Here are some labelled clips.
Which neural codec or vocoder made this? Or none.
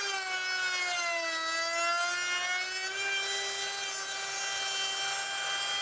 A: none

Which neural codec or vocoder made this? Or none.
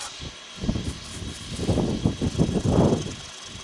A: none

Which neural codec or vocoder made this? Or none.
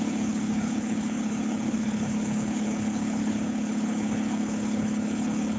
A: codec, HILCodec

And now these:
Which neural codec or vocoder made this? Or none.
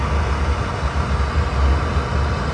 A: none